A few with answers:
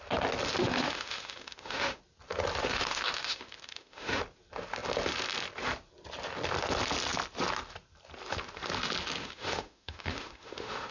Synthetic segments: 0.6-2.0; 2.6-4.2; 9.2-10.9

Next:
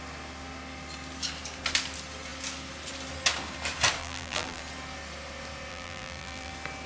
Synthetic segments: 4.0-4.6; 5.7-6.5

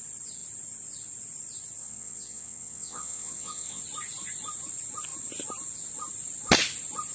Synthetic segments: 1.8-3.8